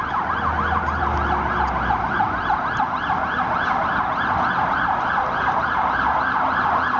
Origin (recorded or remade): recorded